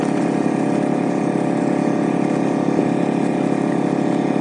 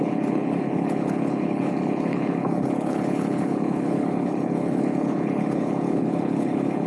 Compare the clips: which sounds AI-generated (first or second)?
second